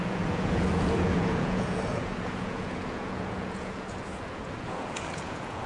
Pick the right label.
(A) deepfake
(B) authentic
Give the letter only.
A